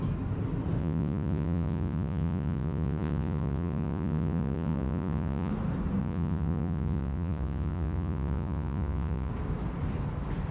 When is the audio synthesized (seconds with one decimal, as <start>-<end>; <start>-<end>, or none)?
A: 0.8-5.5; 6.0-9.3